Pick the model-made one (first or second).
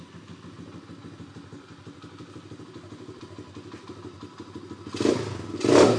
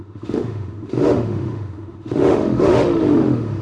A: second